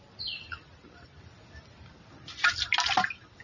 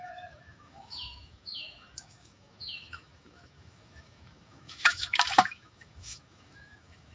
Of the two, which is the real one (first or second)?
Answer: first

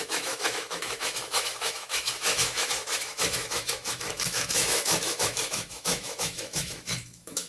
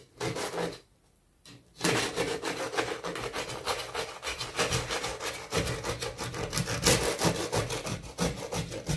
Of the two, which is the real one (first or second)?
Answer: second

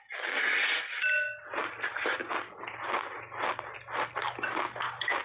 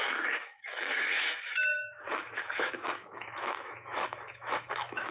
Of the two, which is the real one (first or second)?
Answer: first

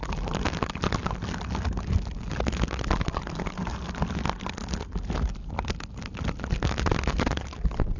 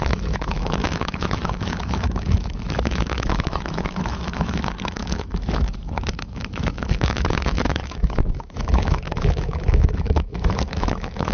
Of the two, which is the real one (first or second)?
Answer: first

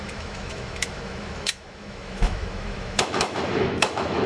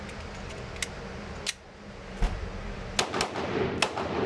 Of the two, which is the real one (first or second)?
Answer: second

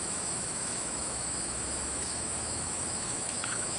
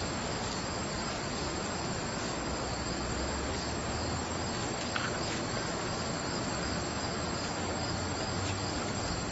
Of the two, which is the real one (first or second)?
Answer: second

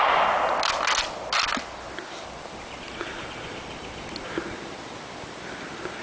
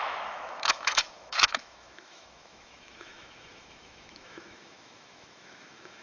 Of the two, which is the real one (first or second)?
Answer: first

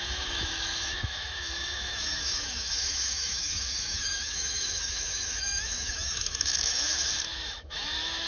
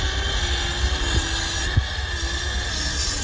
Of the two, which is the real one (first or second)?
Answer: second